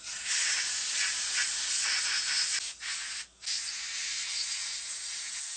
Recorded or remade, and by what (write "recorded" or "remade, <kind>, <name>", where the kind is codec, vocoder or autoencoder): recorded